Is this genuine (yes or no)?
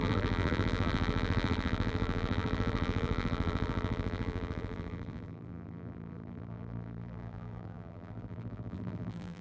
no